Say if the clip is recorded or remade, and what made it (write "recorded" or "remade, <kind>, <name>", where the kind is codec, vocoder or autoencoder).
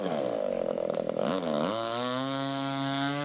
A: remade, codec, DAC